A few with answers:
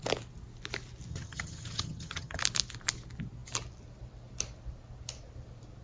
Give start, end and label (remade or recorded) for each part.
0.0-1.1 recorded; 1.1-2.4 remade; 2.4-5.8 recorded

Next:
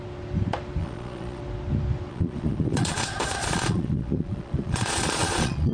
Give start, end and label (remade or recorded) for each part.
0.0-0.8 recorded; 0.8-1.4 remade; 1.4-2.1 recorded; 2.1-5.7 remade

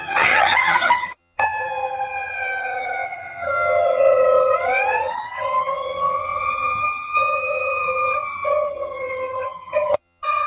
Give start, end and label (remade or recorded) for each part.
0.0-10.5 remade

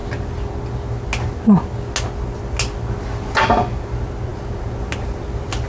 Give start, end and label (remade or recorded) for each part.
0.0-5.7 recorded

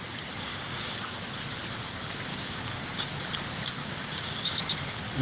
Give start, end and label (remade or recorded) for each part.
0.0-0.5 recorded; 0.5-1.3 remade; 1.3-2.3 recorded; 2.3-3.0 remade; 3.0-3.8 recorded; 3.8-4.6 remade; 4.6-5.2 recorded

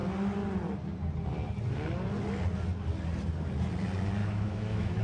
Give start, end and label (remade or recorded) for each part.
0.0-4.2 recorded; 4.2-5.0 remade